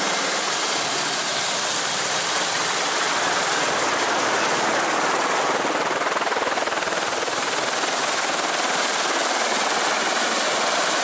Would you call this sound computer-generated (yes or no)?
no